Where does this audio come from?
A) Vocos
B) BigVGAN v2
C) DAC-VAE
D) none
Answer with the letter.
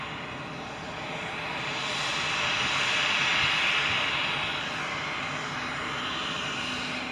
D